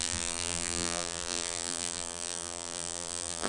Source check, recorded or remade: remade